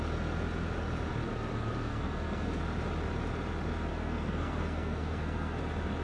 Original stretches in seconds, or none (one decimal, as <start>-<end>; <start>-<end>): 0.0-1.8; 2.6-3.9; 5.6-6.0